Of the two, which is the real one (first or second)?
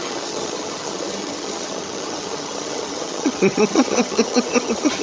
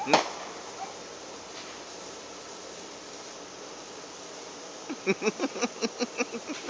second